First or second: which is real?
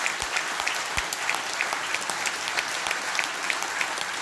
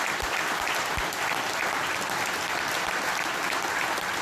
first